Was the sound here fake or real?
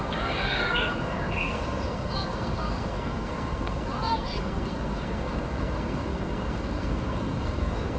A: fake